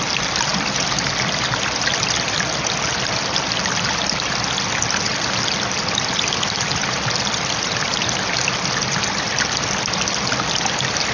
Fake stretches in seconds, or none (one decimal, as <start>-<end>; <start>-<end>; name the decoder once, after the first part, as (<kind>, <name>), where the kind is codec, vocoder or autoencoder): none